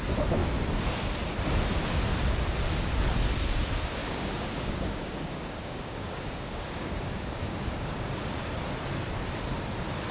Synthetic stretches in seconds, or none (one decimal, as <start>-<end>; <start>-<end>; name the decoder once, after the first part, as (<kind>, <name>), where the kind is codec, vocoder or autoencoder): 4.0-8.3 (codec, DAC)